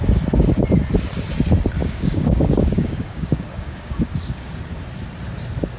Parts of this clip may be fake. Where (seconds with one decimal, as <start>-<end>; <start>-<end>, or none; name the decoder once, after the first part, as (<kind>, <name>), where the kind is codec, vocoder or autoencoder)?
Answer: 1.8-4.6 (codec, DAC)